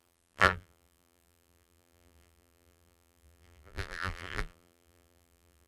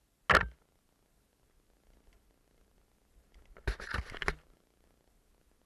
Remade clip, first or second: first